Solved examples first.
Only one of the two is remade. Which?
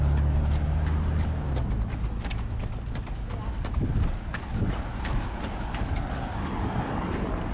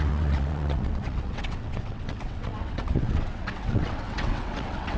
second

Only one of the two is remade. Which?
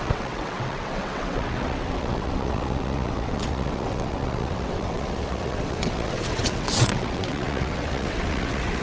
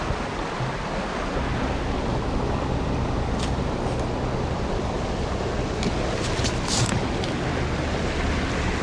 first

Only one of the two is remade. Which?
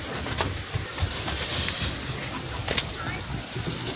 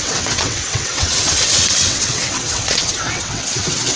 second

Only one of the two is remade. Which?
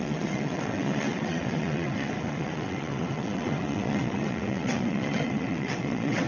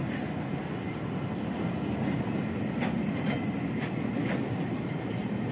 first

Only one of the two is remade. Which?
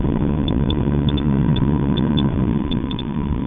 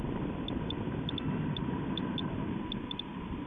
first